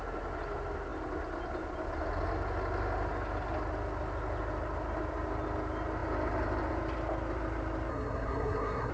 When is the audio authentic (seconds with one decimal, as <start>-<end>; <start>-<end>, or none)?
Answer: 0.0-7.9